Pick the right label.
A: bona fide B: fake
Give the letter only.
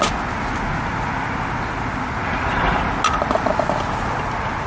A